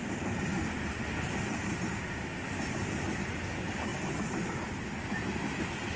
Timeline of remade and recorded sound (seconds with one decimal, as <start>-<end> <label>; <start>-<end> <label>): 0.0-6.0 recorded